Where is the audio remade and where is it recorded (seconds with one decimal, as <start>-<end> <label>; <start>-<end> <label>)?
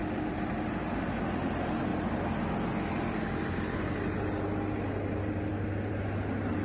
0.0-6.6 recorded